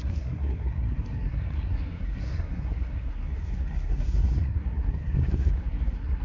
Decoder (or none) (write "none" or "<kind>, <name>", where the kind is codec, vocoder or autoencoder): codec, SNAC